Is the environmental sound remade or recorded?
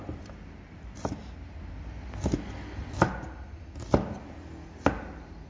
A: recorded